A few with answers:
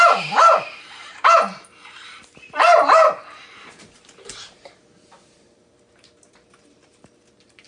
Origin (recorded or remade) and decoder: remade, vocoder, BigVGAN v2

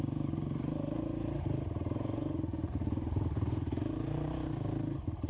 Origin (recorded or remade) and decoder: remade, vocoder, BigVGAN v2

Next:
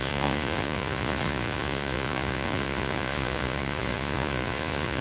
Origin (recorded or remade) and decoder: remade, vocoder, Vocos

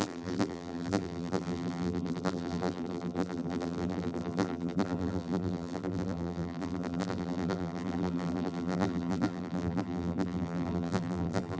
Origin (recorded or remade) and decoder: remade, vocoder, BigVGAN v2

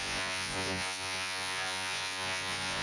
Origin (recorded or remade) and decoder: remade, vocoder, Vocos